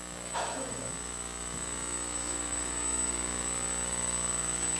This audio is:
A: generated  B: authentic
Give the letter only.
A